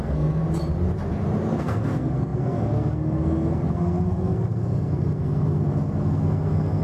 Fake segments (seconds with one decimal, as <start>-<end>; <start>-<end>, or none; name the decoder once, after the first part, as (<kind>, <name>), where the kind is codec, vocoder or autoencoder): 0.0-0.4 (codec, SNAC); 1.5-6.8